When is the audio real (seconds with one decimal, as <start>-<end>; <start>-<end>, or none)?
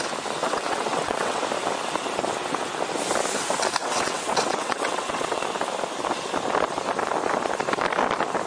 0.0-0.4; 1.4-3.8; 5.4-8.5